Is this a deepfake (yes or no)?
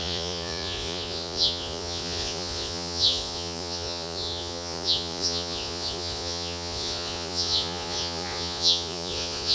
yes